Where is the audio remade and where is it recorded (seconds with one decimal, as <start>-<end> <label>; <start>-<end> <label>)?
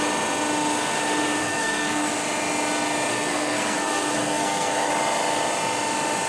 0.0-1.4 recorded; 1.4-2.1 remade; 2.1-3.1 recorded; 3.1-4.9 remade; 4.9-6.3 recorded